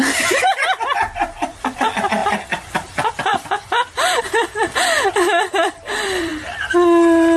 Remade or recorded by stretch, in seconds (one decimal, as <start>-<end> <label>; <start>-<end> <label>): 0.0-6.3 remade; 6.3-7.4 recorded